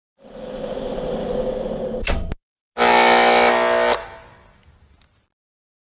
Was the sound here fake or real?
real